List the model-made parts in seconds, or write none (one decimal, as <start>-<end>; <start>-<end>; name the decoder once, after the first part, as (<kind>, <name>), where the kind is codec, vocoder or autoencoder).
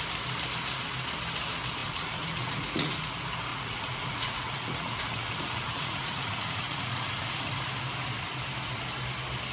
1.8-3.1 (vocoder, Vocos); 3.5-7.5